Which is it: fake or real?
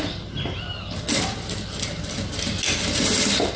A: real